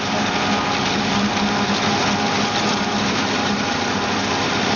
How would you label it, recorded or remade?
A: recorded